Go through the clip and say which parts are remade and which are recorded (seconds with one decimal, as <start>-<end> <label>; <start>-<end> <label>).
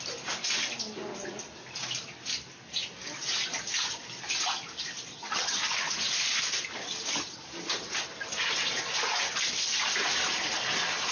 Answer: 0.0-5.1 recorded; 5.1-5.6 remade; 5.6-11.1 recorded